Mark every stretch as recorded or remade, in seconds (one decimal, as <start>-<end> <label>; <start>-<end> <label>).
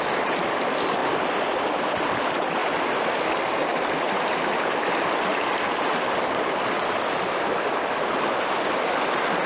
0.0-9.5 recorded